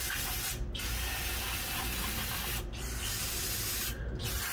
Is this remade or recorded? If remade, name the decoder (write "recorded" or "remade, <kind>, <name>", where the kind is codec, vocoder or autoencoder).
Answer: recorded